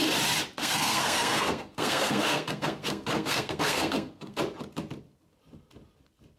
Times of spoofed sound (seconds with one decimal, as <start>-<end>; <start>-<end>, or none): 0.6-4.4